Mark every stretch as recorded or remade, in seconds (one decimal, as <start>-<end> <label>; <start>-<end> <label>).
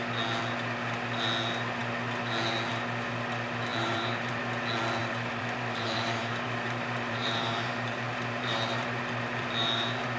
0.0-3.7 recorded; 3.7-4.4 remade; 4.4-5.0 recorded; 5.0-10.2 remade